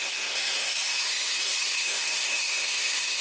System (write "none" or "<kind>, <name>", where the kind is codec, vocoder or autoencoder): codec, SNAC